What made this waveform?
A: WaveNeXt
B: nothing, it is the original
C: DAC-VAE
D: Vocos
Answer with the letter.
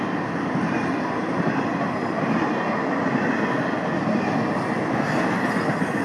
B